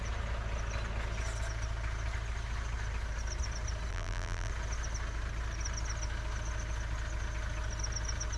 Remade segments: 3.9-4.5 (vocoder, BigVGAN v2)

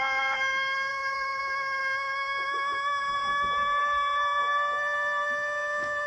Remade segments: 0.9-1.4 (vocoder, BigVGAN v2)

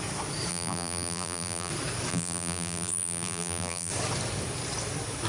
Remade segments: 0.5-1.7 (vocoder, BigVGAN v2); 2.1-3.9

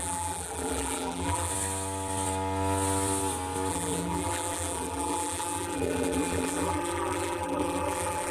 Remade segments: 0.0-1.5 (vocoder, BigVGAN v2); 3.7-8.3

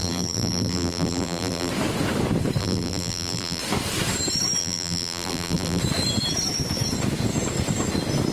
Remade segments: 0.0-1.7 (vocoder, BigVGAN v2); 2.6-3.6; 4.6-5.8

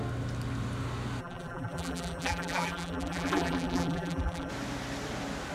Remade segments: 1.2-4.5 (vocoder, BigVGAN v2)